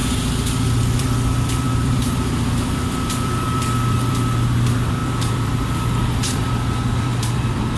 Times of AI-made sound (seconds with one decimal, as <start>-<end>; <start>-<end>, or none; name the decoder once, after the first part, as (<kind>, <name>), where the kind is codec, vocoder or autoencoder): 1.0-7.8 (vocoder, BigVGAN v2)